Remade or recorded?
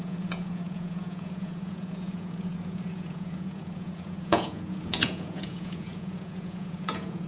remade